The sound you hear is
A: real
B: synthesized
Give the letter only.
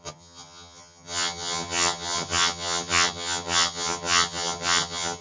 B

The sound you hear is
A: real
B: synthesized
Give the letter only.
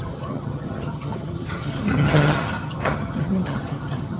B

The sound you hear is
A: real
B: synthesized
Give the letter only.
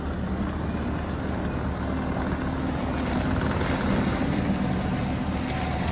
A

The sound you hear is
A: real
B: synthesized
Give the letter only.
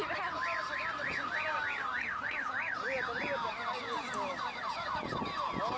A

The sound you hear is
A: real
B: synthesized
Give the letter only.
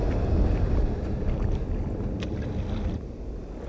A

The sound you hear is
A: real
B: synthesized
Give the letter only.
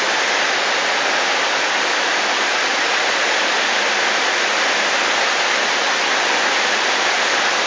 A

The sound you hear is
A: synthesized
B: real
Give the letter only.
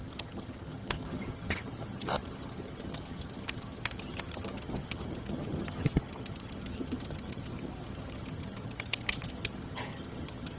A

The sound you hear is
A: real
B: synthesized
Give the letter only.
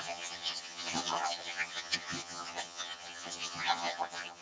B